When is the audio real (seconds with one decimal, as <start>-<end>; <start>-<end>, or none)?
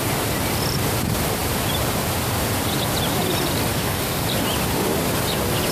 0.0-3.7; 4.3-5.7